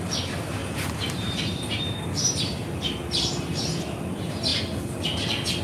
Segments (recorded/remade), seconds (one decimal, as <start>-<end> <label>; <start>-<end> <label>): 0.0-4.5 remade; 4.5-5.6 recorded